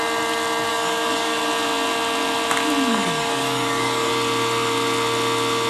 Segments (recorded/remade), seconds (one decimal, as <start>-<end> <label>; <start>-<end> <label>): 0.0-0.7 recorded; 0.7-1.4 remade; 1.4-2.9 recorded; 2.9-4.1 remade; 4.1-5.7 recorded